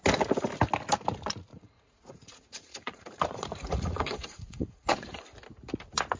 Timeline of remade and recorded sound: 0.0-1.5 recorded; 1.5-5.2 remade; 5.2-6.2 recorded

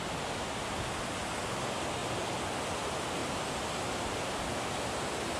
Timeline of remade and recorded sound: 0.0-5.4 recorded

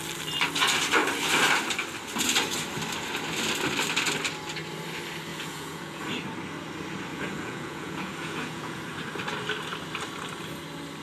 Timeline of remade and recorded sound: 0.0-5.3 recorded; 5.3-6.0 remade; 6.0-7.1 recorded; 7.1-8.8 remade; 8.8-11.0 recorded

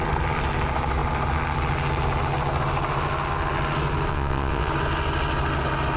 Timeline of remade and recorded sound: 0.0-4.1 recorded; 4.1-4.7 remade; 4.7-6.0 recorded

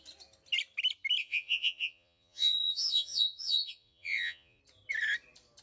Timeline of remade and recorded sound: 0.0-1.2 recorded; 1.2-4.6 remade; 4.6-5.6 recorded